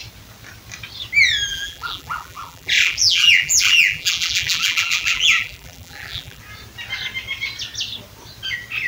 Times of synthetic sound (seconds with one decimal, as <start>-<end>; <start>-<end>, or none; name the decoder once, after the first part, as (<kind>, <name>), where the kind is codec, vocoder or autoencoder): 1.5-6.4 (vocoder, BigVGAN v2)